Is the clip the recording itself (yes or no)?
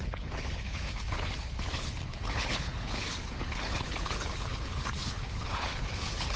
no